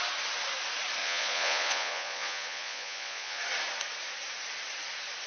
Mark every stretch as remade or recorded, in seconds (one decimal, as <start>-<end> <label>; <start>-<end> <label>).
0.0-1.0 recorded; 1.0-3.4 remade; 3.4-5.3 recorded